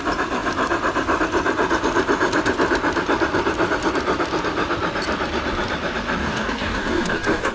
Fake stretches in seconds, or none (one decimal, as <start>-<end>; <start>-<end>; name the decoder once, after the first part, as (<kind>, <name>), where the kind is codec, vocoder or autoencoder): 6.2-7.5 (codec, DAC)